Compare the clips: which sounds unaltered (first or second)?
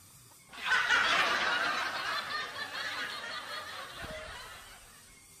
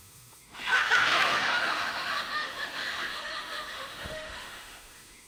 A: first